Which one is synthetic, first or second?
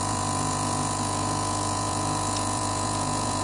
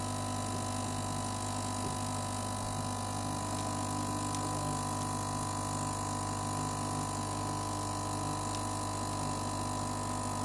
first